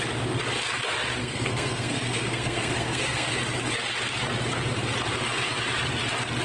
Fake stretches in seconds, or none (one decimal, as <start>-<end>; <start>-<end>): 1.2-3.4